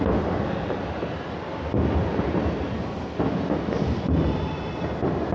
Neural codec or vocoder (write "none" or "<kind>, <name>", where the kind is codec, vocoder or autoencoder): none